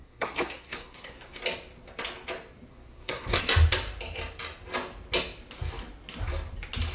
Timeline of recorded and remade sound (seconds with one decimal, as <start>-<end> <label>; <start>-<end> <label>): 0.0-1.4 remade; 1.4-2.7 recorded; 2.7-3.4 remade; 3.4-6.9 recorded